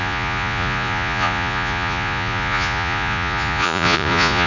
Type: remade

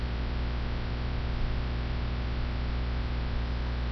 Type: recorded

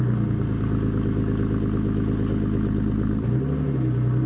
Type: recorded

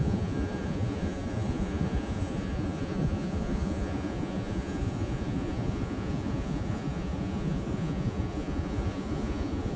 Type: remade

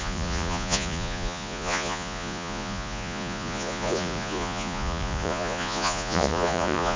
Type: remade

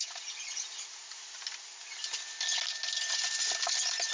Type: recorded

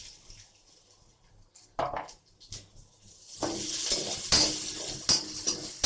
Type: recorded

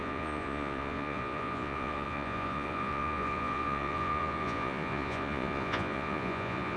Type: remade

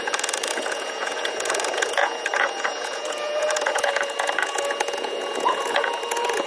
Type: remade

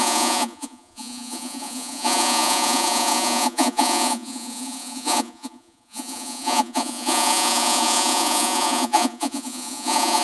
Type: remade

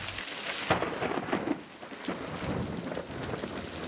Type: recorded